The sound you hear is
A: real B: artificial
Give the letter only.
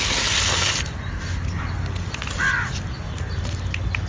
A